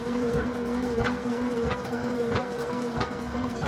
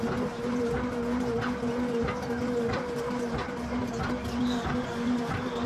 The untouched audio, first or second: second